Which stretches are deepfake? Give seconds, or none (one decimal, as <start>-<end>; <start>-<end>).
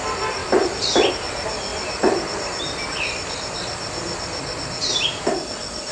0.4-1.1; 1.7-5.2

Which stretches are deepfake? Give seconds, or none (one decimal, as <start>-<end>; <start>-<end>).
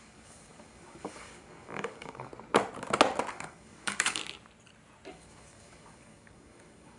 0.0-2.3; 3.3-4.2; 5.1-7.0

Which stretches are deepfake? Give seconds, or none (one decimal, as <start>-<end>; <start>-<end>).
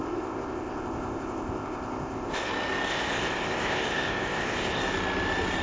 0.0-2.5; 2.9-4.8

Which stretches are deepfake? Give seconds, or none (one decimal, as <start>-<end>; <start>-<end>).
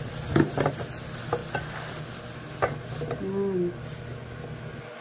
none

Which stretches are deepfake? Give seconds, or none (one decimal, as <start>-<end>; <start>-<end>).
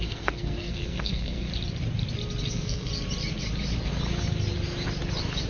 0.0-1.5; 2.5-2.9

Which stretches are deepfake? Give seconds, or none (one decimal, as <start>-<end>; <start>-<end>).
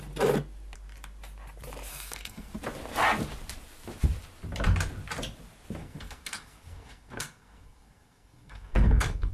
1.9-2.5; 5.8-9.3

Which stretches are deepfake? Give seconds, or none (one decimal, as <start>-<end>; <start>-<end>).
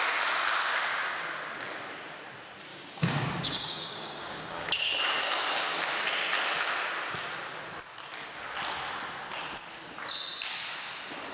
2.7-4.7